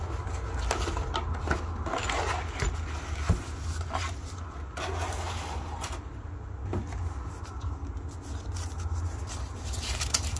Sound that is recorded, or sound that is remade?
recorded